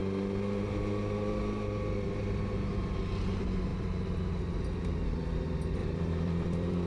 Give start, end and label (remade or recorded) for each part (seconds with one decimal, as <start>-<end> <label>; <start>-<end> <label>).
0.0-3.7 recorded; 3.7-5.1 remade; 5.1-5.8 recorded; 5.8-6.9 remade